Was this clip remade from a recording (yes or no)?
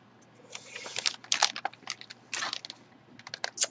no